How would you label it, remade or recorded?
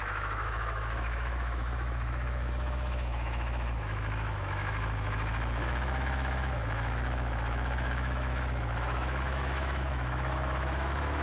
remade